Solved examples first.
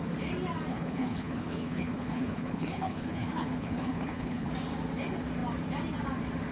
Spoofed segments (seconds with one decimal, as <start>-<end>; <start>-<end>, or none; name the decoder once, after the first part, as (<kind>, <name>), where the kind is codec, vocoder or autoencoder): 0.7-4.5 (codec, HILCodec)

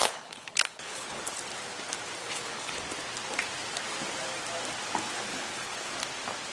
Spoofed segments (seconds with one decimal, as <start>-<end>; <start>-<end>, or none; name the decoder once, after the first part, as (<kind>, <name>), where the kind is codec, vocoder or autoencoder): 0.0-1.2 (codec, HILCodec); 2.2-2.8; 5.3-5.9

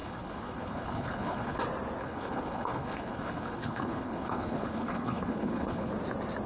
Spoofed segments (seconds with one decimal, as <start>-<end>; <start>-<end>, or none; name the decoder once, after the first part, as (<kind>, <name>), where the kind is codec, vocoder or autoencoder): 0.0-1.6 (codec, HILCodec); 2.0-5.9

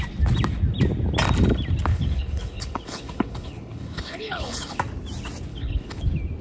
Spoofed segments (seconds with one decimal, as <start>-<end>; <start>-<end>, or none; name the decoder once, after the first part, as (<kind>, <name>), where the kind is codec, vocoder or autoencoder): 1.9-4.8 (codec, HILCodec); 5.5-6.0

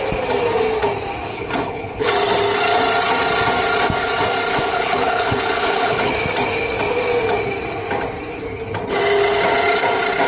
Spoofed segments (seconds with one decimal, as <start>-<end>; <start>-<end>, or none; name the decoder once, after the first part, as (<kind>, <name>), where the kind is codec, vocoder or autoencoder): 1.3-2.1 (codec, HILCodec); 4.7-6.1